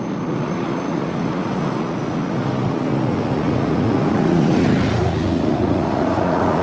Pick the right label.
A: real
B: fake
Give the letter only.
B